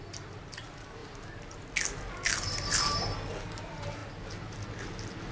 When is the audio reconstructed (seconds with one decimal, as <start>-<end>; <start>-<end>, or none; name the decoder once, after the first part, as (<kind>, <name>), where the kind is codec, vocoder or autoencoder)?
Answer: none